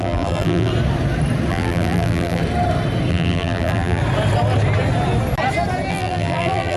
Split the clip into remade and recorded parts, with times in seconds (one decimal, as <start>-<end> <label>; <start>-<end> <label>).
0.0-0.7 remade; 0.7-1.5 recorded; 1.5-2.4 remade; 2.4-3.1 recorded; 3.1-4.0 remade; 4.0-5.9 recorded; 5.9-6.8 remade